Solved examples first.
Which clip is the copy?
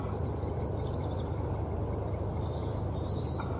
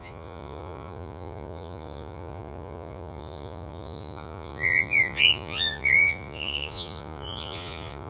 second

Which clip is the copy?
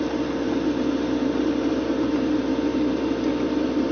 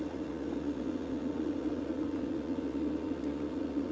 second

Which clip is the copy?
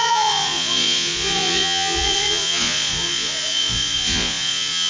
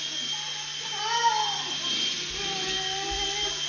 first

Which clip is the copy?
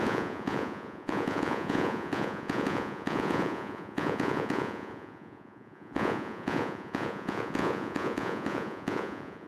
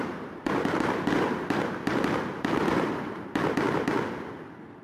first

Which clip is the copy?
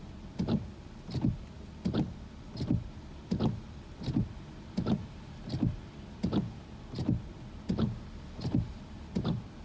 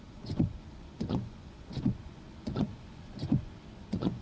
second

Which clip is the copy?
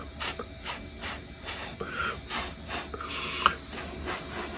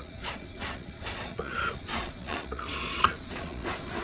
second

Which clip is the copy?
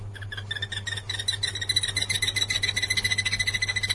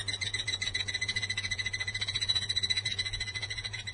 second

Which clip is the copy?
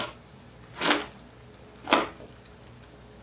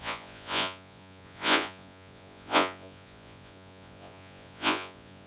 second